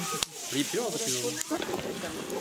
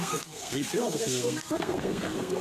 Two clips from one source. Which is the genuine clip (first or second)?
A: first